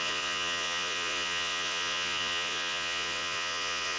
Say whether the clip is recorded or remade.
remade